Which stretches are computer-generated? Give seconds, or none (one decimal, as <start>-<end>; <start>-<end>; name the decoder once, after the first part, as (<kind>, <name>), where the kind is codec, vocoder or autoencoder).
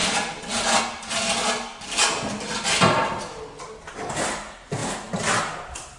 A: none